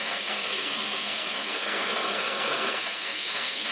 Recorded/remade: remade